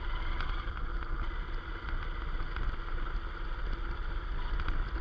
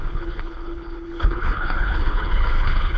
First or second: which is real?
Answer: first